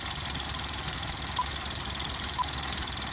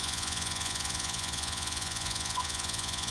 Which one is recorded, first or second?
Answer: first